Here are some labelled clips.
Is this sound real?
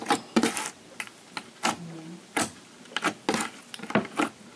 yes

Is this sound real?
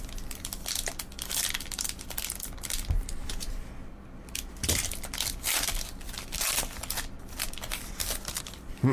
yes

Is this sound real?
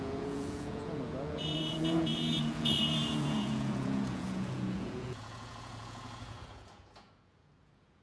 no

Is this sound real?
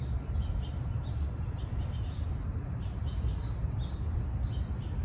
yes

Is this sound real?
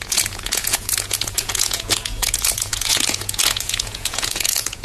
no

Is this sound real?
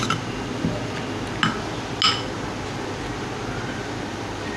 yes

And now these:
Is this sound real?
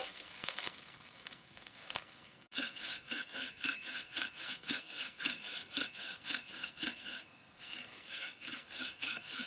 no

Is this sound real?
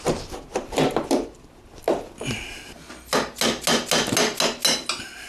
yes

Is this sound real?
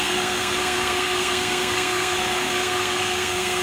no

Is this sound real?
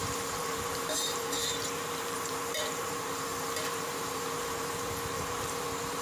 no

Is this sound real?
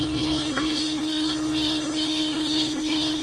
no